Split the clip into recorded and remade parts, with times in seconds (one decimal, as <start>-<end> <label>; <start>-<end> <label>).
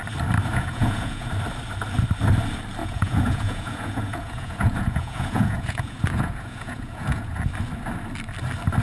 0.0-0.5 recorded; 0.5-1.3 remade; 1.3-2.8 recorded; 2.8-7.4 remade; 7.4-8.8 recorded